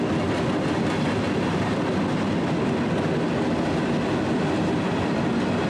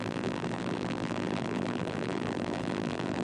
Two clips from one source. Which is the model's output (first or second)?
second